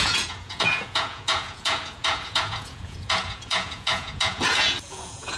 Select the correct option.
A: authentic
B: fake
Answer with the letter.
B